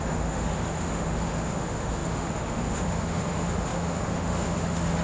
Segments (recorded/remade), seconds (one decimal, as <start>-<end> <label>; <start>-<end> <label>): 0.0-5.0 remade